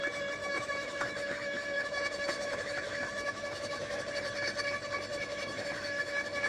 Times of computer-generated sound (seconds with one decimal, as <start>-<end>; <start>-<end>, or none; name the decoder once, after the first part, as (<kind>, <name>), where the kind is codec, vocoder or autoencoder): 0.4-4.0 (autoencoder, DAC-VAE); 5.1-6.5